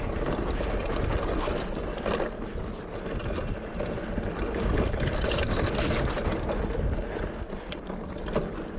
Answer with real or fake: real